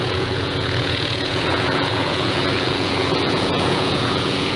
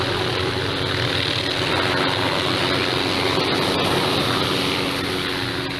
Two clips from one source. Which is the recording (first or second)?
second